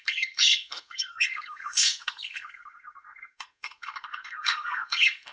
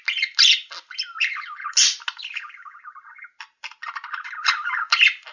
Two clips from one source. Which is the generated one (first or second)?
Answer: first